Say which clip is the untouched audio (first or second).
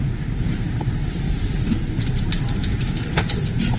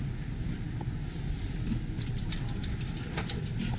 second